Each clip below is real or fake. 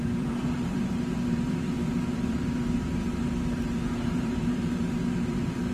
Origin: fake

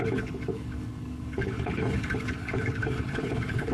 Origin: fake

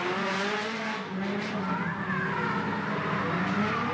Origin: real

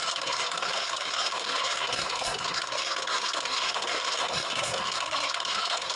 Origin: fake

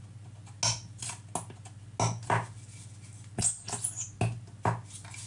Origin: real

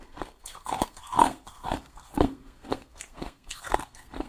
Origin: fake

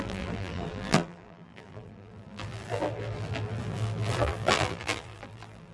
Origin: fake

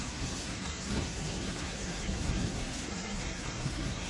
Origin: fake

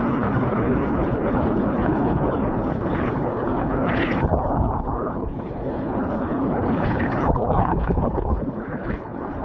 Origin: fake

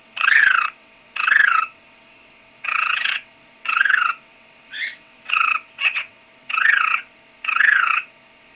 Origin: fake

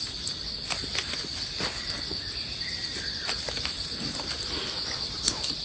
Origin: real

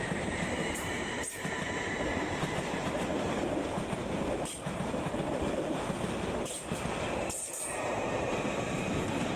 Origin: fake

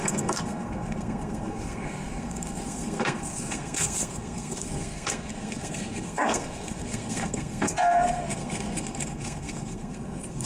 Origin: fake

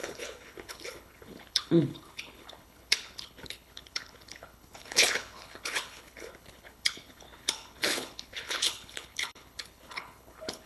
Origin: fake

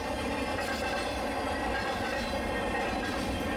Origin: real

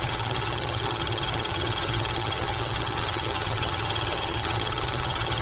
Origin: fake